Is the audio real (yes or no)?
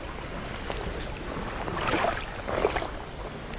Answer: yes